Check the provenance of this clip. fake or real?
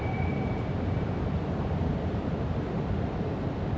fake